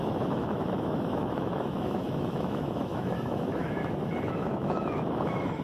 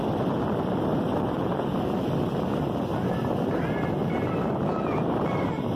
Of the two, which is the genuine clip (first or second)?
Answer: second